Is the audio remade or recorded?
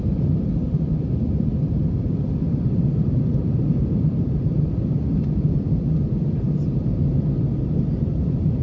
remade